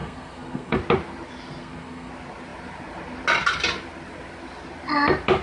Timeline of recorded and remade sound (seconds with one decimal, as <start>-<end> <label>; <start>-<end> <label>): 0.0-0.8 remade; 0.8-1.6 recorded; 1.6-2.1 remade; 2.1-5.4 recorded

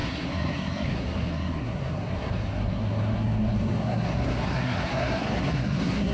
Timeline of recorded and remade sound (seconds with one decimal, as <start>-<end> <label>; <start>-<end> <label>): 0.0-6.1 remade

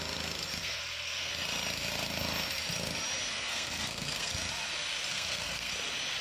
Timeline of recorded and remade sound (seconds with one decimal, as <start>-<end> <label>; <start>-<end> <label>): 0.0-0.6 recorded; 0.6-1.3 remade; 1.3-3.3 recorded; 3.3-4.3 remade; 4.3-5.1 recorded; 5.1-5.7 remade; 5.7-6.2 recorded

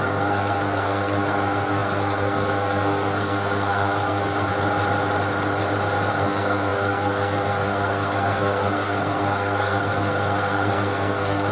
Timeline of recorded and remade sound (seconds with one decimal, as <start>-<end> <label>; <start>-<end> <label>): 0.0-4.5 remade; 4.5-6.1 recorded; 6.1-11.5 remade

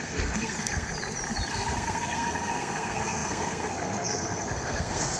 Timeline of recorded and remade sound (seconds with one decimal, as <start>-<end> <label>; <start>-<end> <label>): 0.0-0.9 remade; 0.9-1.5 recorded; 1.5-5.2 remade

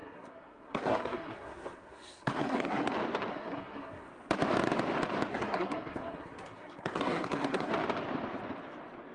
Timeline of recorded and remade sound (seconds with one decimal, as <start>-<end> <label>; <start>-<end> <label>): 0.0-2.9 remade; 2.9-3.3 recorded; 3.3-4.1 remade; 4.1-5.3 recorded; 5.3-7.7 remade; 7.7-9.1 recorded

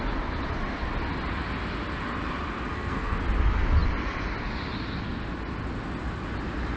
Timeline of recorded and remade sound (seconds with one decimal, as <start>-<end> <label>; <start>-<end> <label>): 0.0-2.7 recorded; 2.7-3.2 remade; 3.2-6.8 recorded

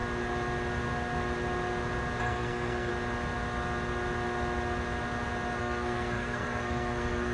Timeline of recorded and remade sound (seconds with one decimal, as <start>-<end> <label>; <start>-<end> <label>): 0.0-2.2 recorded; 2.2-2.9 remade; 2.9-5.6 recorded; 5.6-7.3 remade